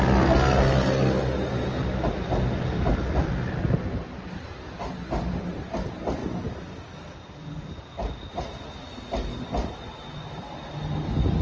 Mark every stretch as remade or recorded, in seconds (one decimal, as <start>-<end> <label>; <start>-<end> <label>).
0.0-11.4 recorded